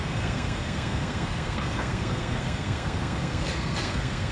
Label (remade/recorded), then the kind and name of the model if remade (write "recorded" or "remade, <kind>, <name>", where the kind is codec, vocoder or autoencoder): remade, codec, SNAC